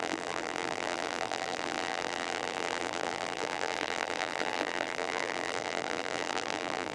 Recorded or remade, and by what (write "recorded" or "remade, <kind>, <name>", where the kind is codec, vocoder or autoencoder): remade, vocoder, BigVGAN v2